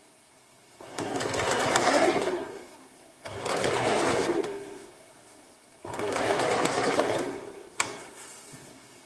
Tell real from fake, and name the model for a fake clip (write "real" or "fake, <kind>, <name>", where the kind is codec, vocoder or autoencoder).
fake, codec, SNAC